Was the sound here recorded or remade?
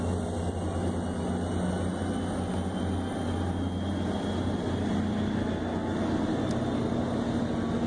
recorded